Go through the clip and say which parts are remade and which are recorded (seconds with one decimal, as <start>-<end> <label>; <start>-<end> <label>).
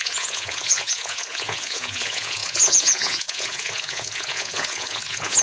0.0-5.4 remade